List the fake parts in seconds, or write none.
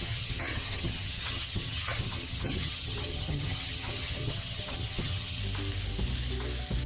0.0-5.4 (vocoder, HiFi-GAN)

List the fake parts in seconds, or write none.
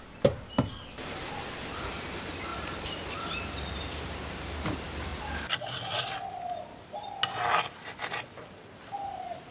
none